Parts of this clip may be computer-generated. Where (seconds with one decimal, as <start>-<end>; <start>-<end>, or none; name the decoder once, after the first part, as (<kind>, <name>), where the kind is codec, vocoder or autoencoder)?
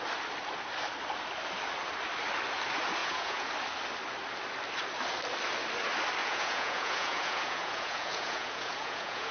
3.0-3.5 (vocoder, Vocos); 6.2-9.3